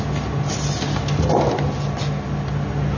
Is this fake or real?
real